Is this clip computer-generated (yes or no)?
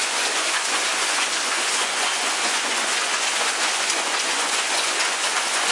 yes